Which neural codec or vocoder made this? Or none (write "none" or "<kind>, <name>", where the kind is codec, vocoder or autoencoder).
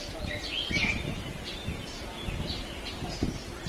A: none